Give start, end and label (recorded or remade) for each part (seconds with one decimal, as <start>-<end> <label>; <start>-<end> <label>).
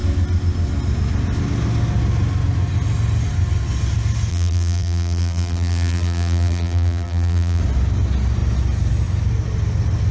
0.0-4.3 recorded; 4.3-7.6 remade; 7.6-10.1 recorded